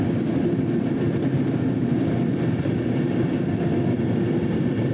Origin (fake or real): real